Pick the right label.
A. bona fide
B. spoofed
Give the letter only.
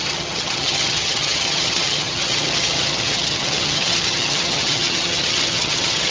B